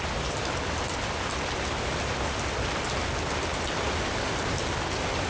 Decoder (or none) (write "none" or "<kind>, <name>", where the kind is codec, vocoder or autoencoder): none